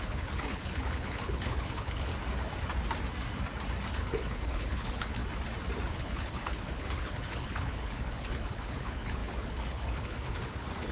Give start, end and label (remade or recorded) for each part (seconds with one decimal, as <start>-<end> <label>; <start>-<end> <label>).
0.0-2.1 remade; 2.1-3.9 recorded; 3.9-5.2 remade; 5.2-5.9 recorded; 5.9-10.9 remade